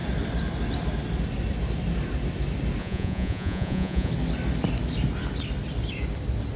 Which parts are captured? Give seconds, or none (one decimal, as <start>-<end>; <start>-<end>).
0.0-2.8; 4.1-6.6